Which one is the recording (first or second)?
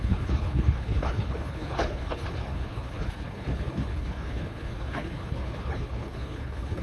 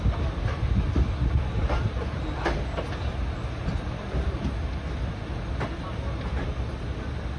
second